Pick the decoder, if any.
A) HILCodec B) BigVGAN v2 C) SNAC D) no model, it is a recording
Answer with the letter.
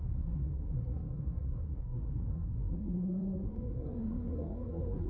C